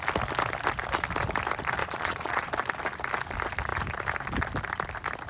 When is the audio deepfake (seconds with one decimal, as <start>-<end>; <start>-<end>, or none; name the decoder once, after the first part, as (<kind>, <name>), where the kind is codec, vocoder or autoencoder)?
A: 1.8-2.4 (vocoder, Vocos)